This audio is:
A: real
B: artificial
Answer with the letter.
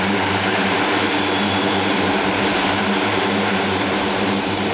B